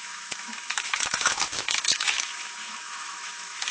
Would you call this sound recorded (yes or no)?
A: no